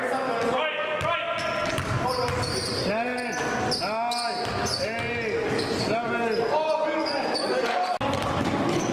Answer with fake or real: real